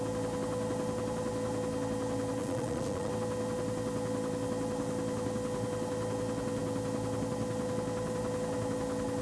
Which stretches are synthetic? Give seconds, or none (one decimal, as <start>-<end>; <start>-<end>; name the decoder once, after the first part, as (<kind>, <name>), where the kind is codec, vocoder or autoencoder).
2.4-3.1 (vocoder, Vocos)